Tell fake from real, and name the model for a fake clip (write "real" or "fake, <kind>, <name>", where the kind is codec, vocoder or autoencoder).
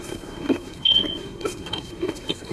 fake, codec, SNAC